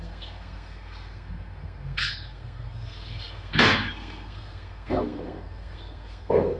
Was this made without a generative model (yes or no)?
no